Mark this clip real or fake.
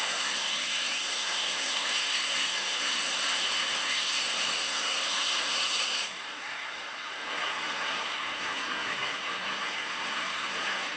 fake